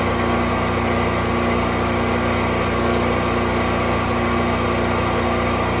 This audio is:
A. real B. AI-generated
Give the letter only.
A